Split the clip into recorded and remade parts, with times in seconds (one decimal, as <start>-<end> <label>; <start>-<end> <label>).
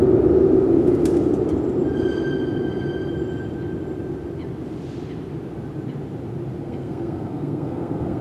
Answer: 0.0-6.6 recorded; 6.6-8.2 remade